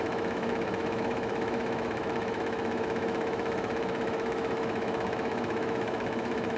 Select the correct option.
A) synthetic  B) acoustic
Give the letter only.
A